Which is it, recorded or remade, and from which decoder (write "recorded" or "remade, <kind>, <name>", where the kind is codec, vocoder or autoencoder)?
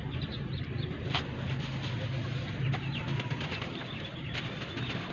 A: recorded